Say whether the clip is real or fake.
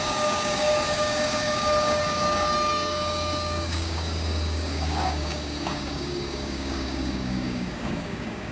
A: fake